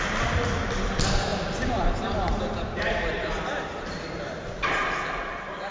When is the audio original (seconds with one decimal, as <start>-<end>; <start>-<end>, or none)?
0.0-1.3; 4.7-5.7